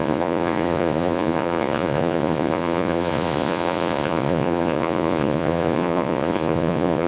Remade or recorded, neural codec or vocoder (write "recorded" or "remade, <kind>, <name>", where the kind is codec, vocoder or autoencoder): remade, vocoder, Vocos